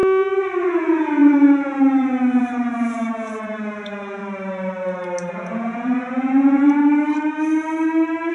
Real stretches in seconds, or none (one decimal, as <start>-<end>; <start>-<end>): 0.0-0.7; 4.2-5.3; 6.8-8.3